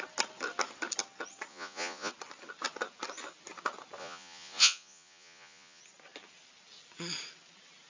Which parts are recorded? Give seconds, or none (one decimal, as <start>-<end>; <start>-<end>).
0.0-1.5; 2.1-4.0; 5.8-7.9